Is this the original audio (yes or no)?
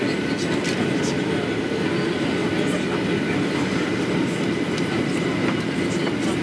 yes